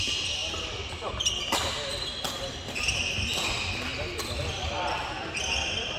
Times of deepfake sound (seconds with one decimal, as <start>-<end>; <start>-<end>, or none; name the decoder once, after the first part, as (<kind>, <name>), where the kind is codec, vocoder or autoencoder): none

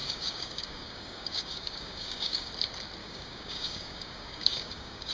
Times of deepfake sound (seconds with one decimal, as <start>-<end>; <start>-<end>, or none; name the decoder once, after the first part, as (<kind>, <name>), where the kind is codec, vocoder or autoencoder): 0.0-2.5 (codec, DAC); 3.0-5.1